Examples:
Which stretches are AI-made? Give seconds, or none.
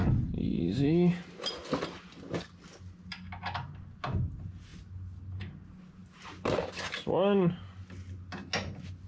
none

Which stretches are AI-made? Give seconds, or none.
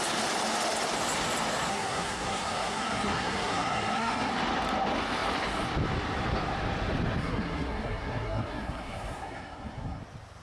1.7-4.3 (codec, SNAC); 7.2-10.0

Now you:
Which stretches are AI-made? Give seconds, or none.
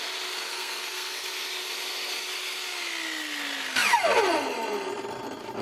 0.5-1.3 (codec, SNAC)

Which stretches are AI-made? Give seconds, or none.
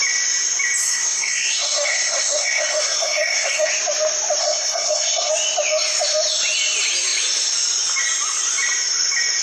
0.8-3.7 (codec, SNAC); 4.4-5.3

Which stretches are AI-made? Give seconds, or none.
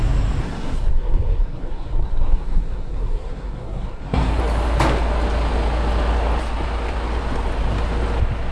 0.4-4.4 (codec, SNAC)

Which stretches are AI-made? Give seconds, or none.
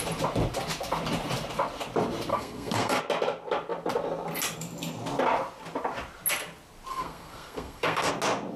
2.3-3.0 (codec, SNAC); 6.9-8.1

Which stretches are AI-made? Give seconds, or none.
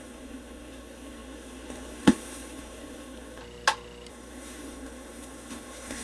0.0-3.4 (codec, SNAC); 4.1-6.0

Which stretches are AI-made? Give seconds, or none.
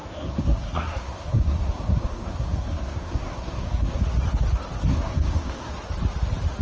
0.0-4.0 (codec, SNAC); 4.9-5.7